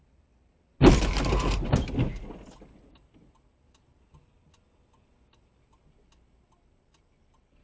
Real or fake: real